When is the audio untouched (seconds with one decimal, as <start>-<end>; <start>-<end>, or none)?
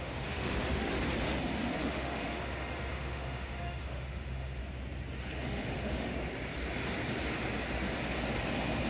0.9-1.8; 4.6-5.4; 6.1-8.9